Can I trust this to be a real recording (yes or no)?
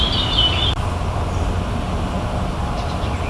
yes